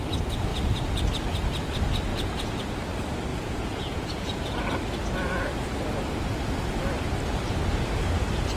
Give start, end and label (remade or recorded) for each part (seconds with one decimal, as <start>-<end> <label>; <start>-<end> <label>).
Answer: 0.0-2.1 recorded; 2.1-2.6 remade; 2.6-3.3 recorded; 3.3-4.4 remade; 4.4-8.6 recorded